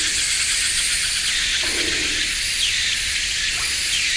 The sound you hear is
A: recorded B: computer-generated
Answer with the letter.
A